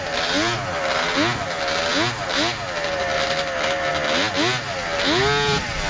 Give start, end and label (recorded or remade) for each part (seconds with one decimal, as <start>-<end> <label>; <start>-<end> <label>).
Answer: 0.0-5.9 recorded